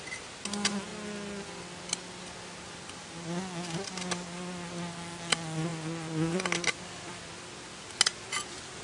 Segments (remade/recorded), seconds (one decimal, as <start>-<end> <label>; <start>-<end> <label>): 0.0-8.8 recorded